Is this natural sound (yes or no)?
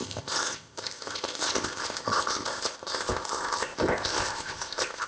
no